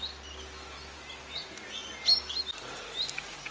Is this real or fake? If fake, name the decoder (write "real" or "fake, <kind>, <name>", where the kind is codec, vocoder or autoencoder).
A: real